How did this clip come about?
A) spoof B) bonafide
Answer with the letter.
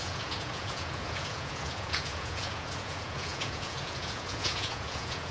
A